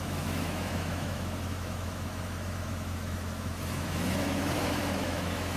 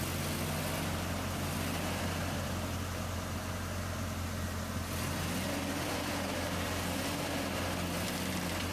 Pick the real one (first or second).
second